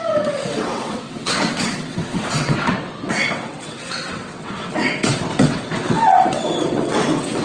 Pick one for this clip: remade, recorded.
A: remade